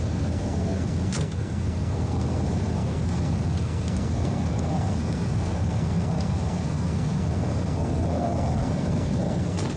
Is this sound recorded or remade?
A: remade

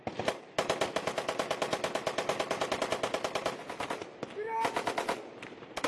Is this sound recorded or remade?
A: recorded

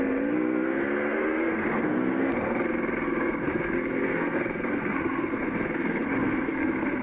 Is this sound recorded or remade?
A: remade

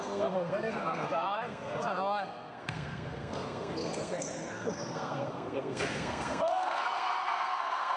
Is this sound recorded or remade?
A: remade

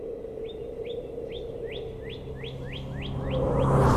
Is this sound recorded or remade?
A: recorded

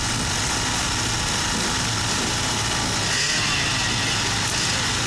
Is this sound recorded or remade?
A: recorded